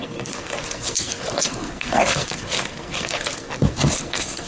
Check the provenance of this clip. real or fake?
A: fake